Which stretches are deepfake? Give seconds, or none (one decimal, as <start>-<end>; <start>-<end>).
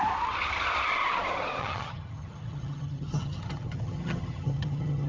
1.6-5.1